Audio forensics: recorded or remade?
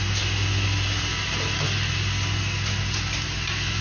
recorded